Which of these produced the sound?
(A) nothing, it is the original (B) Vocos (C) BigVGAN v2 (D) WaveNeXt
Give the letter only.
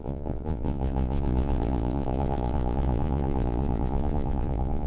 B